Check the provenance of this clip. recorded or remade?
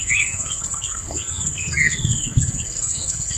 remade